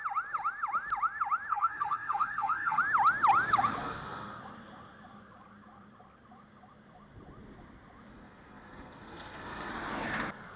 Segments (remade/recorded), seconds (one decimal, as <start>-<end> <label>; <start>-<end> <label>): 0.0-1.5 recorded; 1.5-2.8 remade; 2.8-3.8 recorded; 3.8-4.4 remade; 4.4-8.1 recorded; 8.1-9.7 remade; 9.7-10.6 recorded